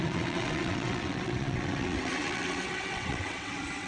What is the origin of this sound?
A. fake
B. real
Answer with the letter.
A